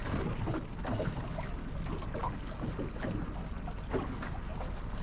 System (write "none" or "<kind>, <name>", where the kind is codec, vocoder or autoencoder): none